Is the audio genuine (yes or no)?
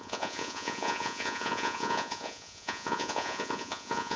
no